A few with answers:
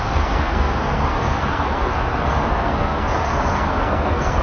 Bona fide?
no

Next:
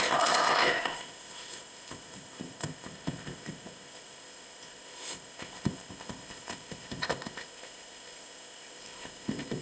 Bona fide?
no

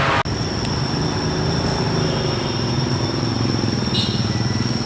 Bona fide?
yes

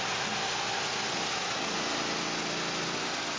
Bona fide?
yes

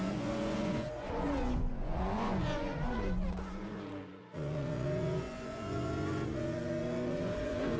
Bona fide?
no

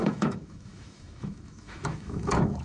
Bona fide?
no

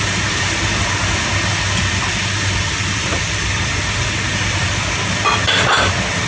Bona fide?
yes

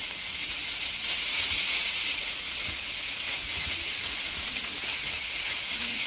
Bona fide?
no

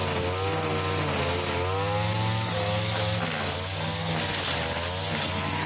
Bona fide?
yes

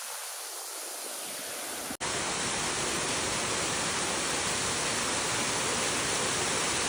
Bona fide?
yes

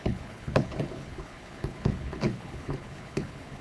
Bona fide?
no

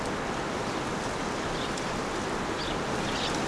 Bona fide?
yes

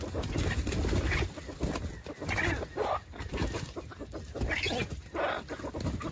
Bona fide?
yes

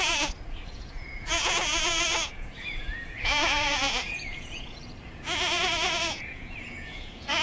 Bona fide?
no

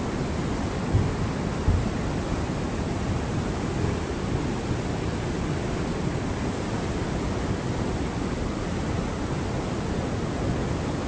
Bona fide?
yes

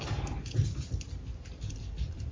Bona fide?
yes